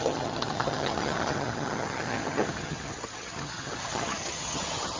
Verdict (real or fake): fake